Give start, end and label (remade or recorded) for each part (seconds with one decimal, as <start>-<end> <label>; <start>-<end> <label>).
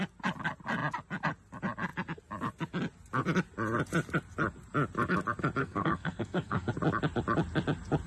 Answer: 0.0-5.6 recorded; 5.6-6.7 remade; 6.7-8.1 recorded